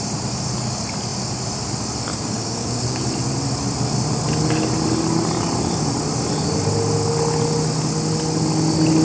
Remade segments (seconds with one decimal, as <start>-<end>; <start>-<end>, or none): 2.1-3.0